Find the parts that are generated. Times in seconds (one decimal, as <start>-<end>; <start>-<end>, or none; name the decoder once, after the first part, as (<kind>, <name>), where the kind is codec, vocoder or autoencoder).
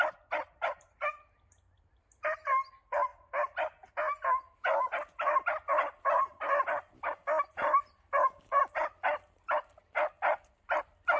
none